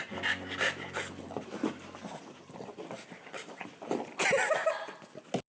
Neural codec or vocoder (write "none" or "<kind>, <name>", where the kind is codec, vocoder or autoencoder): none